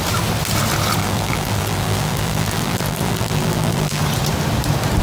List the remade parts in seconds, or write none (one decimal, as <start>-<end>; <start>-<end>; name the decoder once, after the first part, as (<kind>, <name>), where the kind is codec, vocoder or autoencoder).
1.0-4.0 (vocoder, BigVGAN v2)